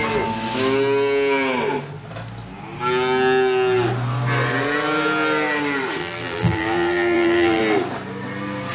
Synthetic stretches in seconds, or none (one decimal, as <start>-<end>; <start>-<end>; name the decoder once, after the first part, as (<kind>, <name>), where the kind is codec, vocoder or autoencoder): 6.0-7.6 (vocoder, BigVGAN v2)